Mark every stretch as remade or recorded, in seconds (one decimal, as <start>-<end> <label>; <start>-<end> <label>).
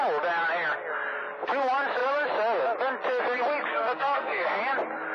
0.0-3.7 recorded; 3.7-4.6 remade; 4.6-5.1 recorded